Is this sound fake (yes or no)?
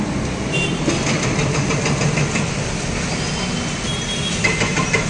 no